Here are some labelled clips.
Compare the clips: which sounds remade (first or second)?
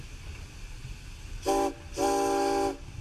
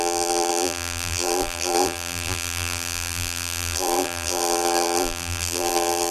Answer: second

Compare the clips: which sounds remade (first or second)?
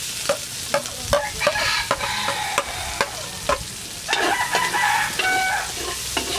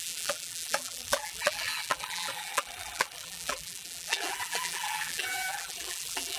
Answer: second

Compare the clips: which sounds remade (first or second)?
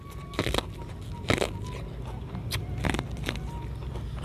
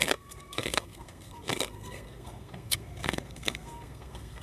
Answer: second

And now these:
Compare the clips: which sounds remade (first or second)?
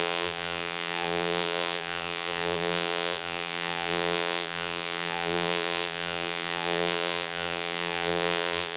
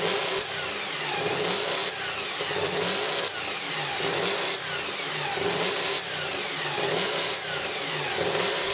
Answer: first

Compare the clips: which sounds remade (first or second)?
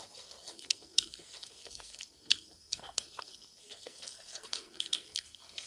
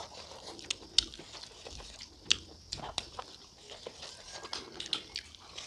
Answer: first